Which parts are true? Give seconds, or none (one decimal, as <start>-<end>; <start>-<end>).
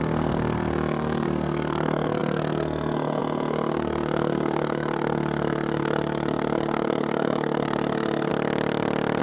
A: 8.3-9.2